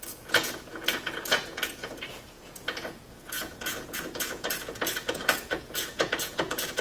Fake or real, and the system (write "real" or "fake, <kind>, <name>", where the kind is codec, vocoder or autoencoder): fake, vocoder, Vocos